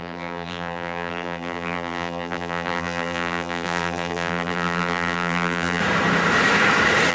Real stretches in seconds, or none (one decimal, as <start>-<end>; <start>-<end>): 5.8-7.1